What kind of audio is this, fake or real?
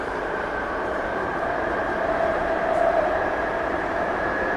fake